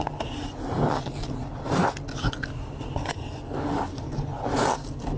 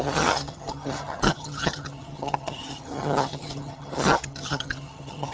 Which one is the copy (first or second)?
second